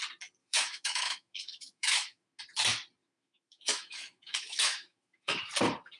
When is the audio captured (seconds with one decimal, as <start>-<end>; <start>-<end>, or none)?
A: 0.0-0.4; 2.4-3.0; 5.4-6.0